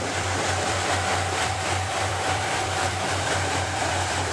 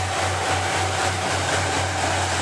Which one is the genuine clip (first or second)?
second